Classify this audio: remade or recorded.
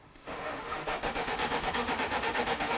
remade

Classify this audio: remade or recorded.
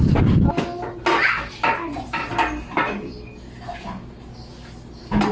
recorded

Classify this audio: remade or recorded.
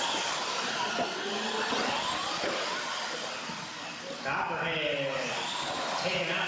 recorded